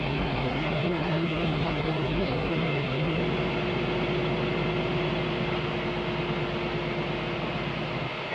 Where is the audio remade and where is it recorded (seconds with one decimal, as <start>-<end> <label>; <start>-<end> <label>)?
0.0-3.2 remade; 3.2-8.3 recorded